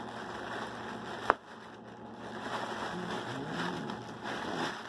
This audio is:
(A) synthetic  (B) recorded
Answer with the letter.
B